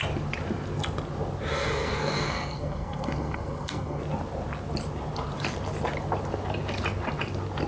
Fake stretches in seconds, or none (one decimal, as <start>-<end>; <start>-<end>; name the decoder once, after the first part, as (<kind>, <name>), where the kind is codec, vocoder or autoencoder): 1.5-4.0 (codec, SNAC)